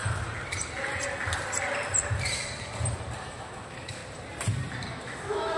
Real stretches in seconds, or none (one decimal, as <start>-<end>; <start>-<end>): 0.0-3.3; 4.0-4.9